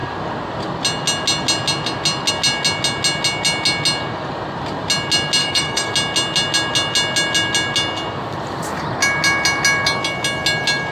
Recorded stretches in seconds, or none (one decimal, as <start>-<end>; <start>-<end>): 0.0-5.4; 5.9-10.9